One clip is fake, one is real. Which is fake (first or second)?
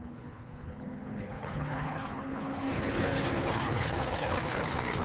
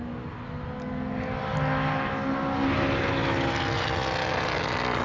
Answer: first